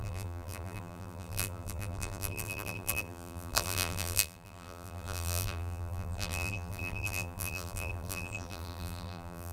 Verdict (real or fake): fake